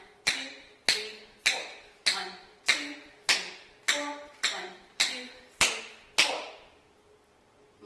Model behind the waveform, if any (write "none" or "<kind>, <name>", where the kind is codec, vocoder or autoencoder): vocoder, BigVGAN v2